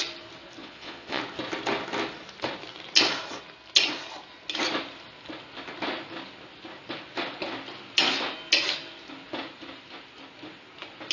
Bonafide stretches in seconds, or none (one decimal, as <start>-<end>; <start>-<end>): 0.0-0.6; 1.2-11.1

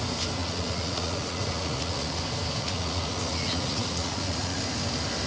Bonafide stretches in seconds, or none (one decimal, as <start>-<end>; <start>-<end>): 0.0-0.4; 2.2-2.6; 4.6-5.3